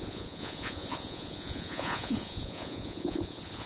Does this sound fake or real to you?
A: fake